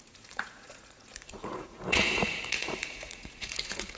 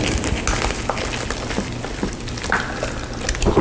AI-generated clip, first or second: first